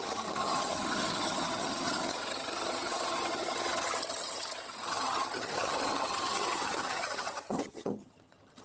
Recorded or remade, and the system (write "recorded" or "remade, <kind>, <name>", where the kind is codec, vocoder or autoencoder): remade, vocoder, HiFi-GAN